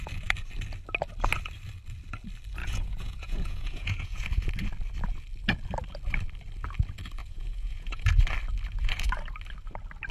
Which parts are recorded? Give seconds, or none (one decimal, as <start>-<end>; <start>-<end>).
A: 0.0-2.6; 4.3-7.2; 8.1-10.1